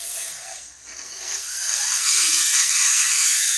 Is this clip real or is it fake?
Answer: fake